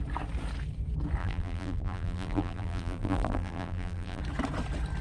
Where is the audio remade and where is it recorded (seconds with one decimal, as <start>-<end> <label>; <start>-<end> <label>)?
0.0-1.2 recorded; 1.2-4.2 remade; 4.2-5.0 recorded

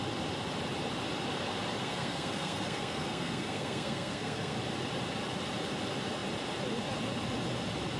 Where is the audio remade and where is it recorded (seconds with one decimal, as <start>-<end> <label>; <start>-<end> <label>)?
0.0-1.8 recorded; 1.8-4.6 remade; 4.6-8.0 recorded

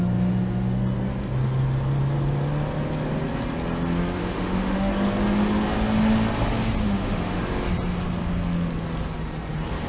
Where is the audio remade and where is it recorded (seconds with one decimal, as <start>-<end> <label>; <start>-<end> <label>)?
0.0-4.2 recorded; 4.2-4.9 remade; 4.9-6.8 recorded; 6.8-7.4 remade; 7.4-9.9 recorded

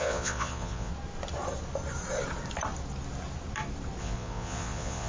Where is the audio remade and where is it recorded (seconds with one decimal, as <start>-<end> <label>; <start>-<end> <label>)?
0.0-0.9 remade; 0.9-4.0 recorded; 4.0-5.1 remade

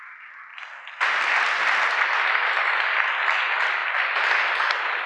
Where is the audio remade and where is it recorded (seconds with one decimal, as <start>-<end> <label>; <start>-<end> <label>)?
0.0-5.1 recorded

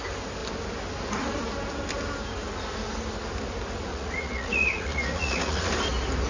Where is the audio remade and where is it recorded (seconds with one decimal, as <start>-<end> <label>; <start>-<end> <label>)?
0.0-3.9 recorded; 3.9-5.7 remade; 5.7-6.3 recorded

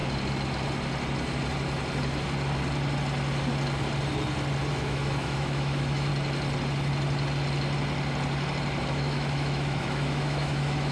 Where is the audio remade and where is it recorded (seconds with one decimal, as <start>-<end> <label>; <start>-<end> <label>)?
0.0-4.7 recorded; 4.7-6.1 remade; 6.1-8.9 recorded; 8.9-10.9 remade